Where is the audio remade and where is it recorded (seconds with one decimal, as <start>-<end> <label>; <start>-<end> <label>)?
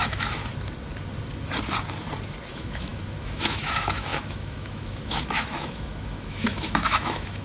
0.0-0.4 remade; 0.4-2.5 recorded; 2.5-7.4 remade